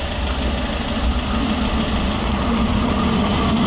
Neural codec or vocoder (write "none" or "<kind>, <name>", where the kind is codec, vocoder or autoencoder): none